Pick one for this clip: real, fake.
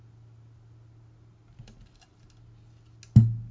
real